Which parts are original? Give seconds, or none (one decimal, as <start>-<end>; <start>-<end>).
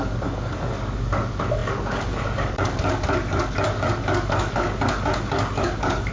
none